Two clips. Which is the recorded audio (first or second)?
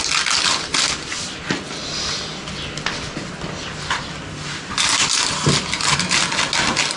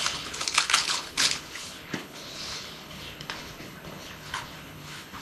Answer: first